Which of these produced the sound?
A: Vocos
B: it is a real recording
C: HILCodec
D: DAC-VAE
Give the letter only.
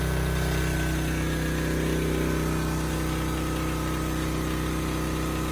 B